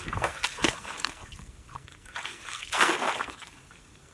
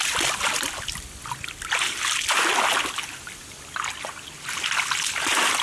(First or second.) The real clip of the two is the second